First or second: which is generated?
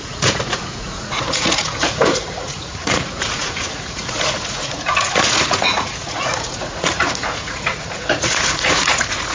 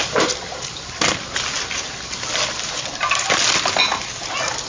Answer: first